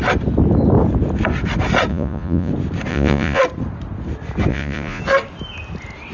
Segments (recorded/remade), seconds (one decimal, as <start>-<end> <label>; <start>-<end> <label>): 0.0-1.9 recorded; 1.9-2.5 remade; 2.5-2.9 recorded; 2.9-3.4 remade; 3.4-4.5 recorded; 4.5-5.0 remade; 5.0-6.1 recorded